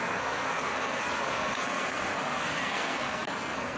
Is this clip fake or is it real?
fake